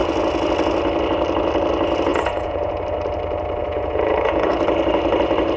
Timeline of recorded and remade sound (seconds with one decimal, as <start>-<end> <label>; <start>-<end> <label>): 0.0-2.1 recorded; 2.1-2.8 remade; 2.8-3.6 recorded; 3.6-4.5 remade; 4.5-5.6 recorded